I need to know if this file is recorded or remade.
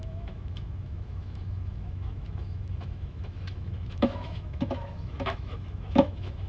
remade